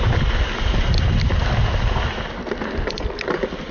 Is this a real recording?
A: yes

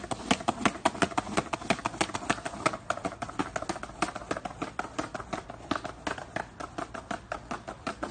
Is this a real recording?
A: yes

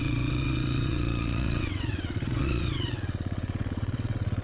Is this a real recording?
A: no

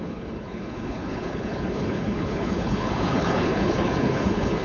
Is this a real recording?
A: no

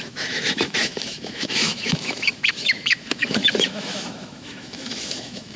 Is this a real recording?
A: no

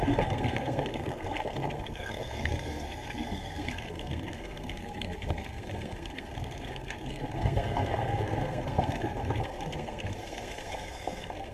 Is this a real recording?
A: no